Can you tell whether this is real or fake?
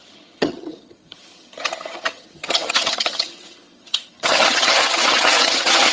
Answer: fake